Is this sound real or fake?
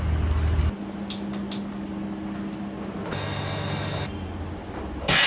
real